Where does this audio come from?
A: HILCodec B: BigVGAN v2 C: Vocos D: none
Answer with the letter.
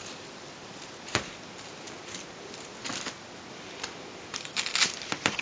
B